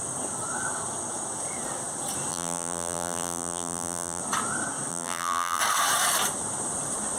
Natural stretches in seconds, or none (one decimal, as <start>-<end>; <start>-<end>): 0.0-2.3; 4.2-4.9; 5.6-7.2